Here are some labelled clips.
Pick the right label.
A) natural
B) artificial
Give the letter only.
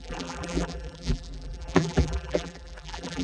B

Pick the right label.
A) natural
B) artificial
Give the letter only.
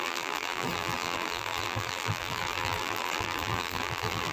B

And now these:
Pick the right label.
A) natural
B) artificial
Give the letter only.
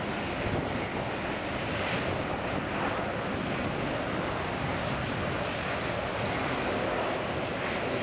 A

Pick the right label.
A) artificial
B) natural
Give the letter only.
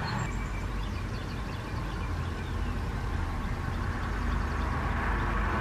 B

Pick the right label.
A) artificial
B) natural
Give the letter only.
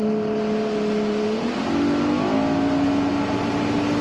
B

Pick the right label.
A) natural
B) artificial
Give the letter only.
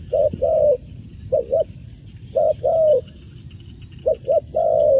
A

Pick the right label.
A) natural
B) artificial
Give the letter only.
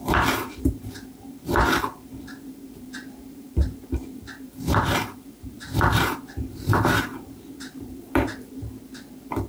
B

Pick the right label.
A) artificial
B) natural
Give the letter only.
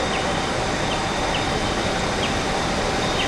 B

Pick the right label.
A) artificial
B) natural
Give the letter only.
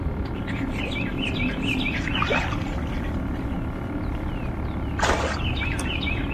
B